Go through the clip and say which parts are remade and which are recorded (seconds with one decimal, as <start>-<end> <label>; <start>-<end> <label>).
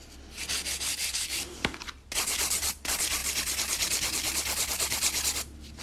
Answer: 0.0-0.9 recorded; 0.9-1.9 remade; 1.9-5.8 recorded